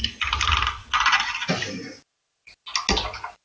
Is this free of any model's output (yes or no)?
yes